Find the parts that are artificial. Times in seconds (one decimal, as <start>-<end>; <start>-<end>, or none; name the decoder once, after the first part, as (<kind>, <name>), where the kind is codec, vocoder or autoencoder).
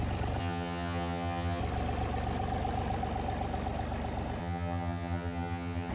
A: 0.4-1.6 (vocoder, HiFi-GAN); 4.4-5.9